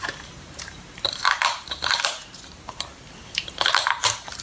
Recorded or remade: remade